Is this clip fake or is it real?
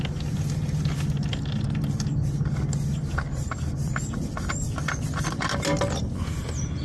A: real